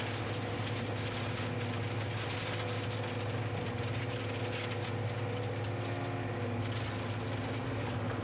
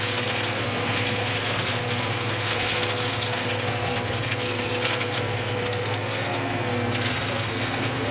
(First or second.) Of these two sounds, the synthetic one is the second